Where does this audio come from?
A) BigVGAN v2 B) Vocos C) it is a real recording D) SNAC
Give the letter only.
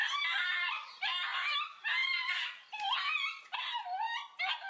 C